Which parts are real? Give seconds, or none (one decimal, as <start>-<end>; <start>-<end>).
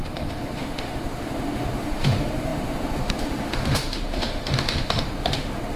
none